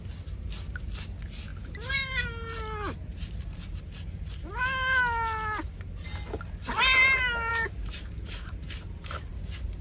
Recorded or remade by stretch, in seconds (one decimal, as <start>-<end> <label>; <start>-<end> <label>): 0.0-1.5 recorded; 1.5-2.2 remade; 2.2-3.1 recorded; 3.1-4.5 remade; 4.5-7.5 recorded; 7.5-9.3 remade; 9.3-9.8 recorded